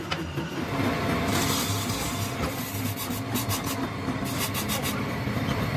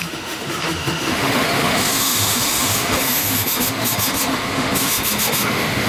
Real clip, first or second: first